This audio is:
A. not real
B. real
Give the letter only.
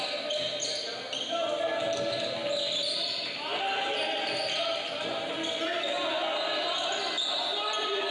B